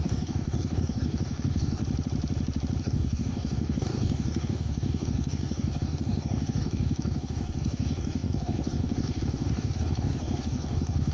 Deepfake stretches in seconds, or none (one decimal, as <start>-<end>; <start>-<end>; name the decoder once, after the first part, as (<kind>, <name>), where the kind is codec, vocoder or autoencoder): 0.0-1.8 (codec, DAC); 2.8-11.1